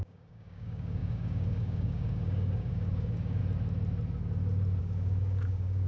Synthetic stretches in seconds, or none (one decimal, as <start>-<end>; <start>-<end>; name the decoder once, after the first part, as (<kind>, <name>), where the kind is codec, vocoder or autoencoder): 0.0-3.4 (codec, DAC); 4.8-5.9